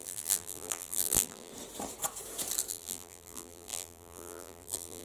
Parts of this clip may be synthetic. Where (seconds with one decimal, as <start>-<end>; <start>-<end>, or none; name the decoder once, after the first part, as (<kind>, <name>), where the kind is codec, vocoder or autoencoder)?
0.0-1.5 (vocoder, BigVGAN v2); 2.7-5.0